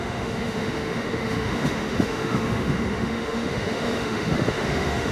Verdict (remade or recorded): remade